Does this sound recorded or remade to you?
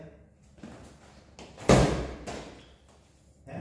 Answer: recorded